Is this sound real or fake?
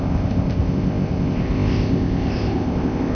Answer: fake